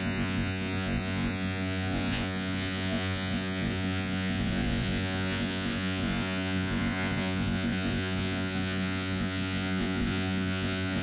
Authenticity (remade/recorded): remade